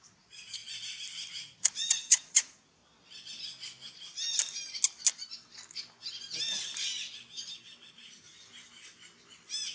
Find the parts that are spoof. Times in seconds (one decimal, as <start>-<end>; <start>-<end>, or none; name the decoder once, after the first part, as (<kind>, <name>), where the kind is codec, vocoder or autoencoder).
0.0-0.6 (vocoder, Vocos); 1.3-2.8; 7.9-8.3